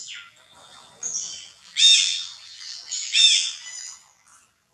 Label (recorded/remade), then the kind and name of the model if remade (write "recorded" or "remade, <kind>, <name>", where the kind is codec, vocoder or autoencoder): remade, vocoder, BigVGAN v2